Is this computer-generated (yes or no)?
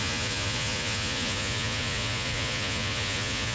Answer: yes